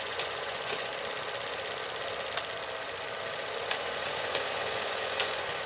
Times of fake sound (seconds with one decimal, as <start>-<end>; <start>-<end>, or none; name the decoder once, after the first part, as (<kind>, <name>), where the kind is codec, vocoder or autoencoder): 0.0-0.9 (vocoder, Vocos); 3.6-5.7